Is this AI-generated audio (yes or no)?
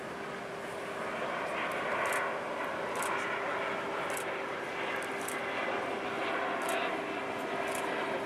no